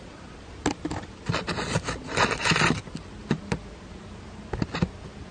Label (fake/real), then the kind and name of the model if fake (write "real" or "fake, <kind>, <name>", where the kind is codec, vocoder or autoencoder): real